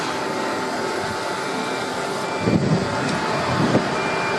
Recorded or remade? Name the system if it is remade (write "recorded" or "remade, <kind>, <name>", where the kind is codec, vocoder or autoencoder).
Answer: recorded